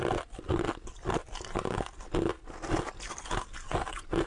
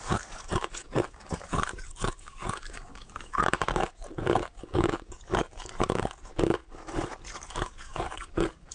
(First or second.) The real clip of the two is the first